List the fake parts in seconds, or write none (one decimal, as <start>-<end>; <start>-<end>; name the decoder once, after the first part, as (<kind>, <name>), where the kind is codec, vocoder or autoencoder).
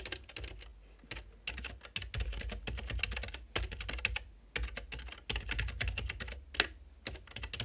none